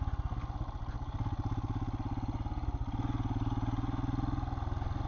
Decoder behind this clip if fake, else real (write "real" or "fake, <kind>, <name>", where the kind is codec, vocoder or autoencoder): real